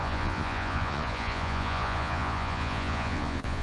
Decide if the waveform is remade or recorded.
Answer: remade